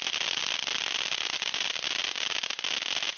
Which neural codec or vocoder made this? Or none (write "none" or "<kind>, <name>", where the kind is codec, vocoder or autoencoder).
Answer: none